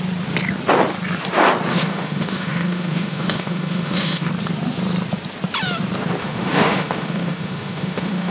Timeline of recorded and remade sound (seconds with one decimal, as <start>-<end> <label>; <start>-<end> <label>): 0.0-1.7 recorded; 1.7-4.3 remade; 4.3-6.2 recorded; 6.2-8.3 remade